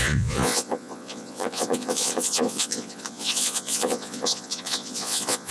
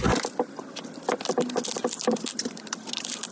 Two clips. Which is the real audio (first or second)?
second